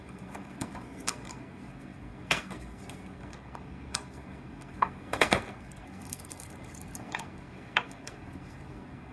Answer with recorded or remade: remade